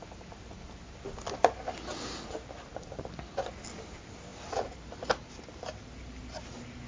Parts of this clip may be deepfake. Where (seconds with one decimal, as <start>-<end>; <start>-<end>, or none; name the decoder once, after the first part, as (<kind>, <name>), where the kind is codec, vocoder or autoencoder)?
none